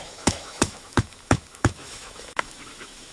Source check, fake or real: fake